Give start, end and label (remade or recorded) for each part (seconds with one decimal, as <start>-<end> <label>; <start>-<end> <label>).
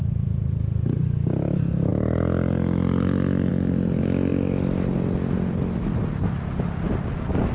0.0-7.5 recorded